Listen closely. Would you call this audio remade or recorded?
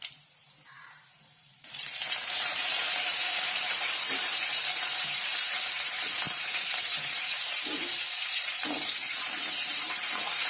remade